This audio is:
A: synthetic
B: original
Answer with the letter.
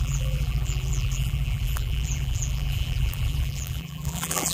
A